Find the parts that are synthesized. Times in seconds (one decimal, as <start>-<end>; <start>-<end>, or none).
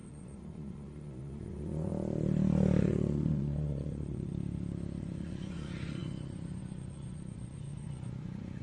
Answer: 0.0-1.9; 2.8-4.3; 5.0-8.6